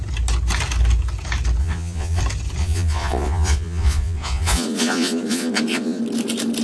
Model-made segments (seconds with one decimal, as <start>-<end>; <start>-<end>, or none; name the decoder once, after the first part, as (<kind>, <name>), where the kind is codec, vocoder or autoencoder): 1.6-2.2 (vocoder, Vocos); 2.6-6.0